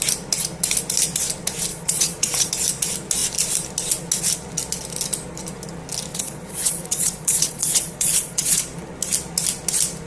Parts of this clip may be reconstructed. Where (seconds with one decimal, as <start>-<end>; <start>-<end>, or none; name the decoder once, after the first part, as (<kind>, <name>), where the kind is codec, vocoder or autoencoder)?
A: 1.7-2.5 (vocoder, Vocos); 6.1-8.6